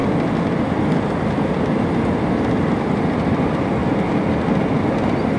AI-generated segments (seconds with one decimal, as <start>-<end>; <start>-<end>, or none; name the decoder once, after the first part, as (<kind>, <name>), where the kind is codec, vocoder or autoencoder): none